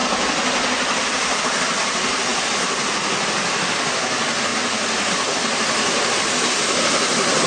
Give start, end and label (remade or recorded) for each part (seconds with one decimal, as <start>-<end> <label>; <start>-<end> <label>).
0.0-7.5 recorded

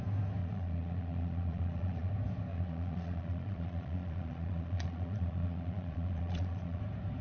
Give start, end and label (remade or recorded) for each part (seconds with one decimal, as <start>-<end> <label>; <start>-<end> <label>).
0.0-0.4 recorded; 0.4-2.1 remade; 2.1-2.5 recorded; 2.5-6.8 remade; 6.8-7.2 recorded

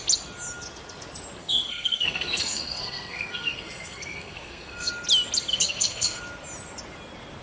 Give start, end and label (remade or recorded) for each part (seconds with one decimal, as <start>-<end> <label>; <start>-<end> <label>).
0.0-1.4 recorded; 1.4-4.9 remade; 4.9-5.5 recorded; 5.5-6.2 remade; 6.2-7.4 recorded